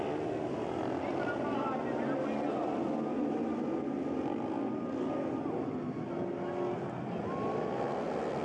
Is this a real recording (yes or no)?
yes